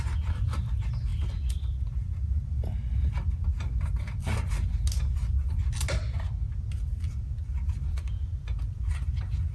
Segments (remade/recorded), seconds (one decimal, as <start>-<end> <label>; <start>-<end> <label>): 0.0-9.5 recorded